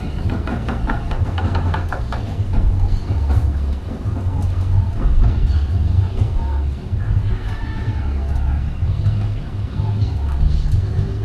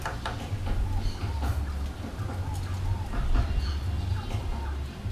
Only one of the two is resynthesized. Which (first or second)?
first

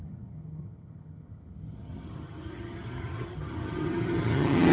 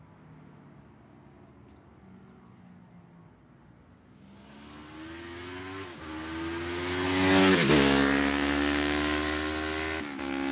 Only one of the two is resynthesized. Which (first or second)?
first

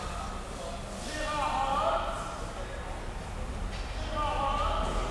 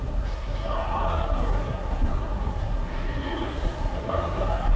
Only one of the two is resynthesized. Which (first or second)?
second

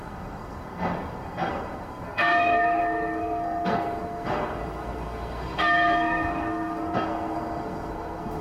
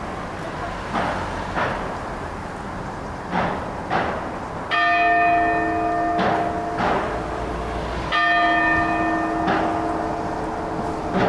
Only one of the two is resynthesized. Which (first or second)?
first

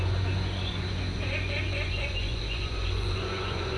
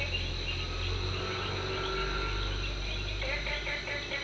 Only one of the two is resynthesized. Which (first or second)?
first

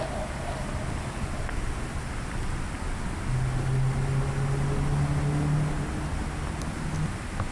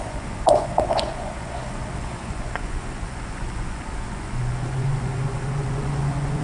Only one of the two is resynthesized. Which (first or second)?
second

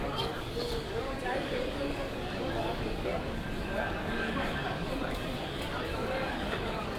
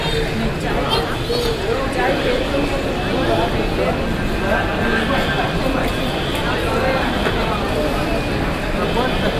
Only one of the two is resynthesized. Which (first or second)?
first